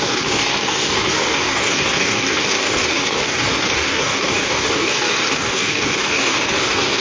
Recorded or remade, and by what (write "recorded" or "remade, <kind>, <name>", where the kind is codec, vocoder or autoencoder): remade, codec, DAC